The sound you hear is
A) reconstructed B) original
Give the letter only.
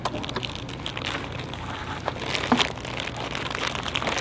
B